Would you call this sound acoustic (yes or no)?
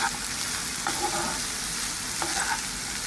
yes